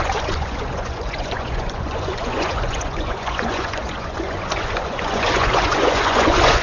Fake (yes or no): yes